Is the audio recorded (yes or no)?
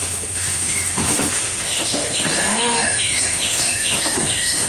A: no